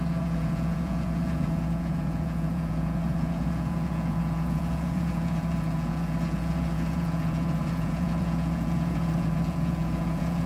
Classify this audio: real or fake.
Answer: fake